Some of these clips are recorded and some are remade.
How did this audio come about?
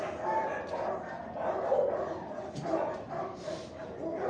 recorded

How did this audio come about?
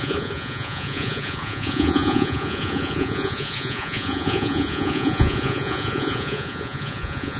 remade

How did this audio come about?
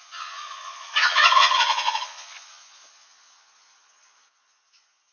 remade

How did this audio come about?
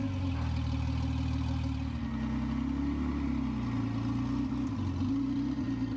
recorded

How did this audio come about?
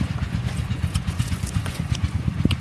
remade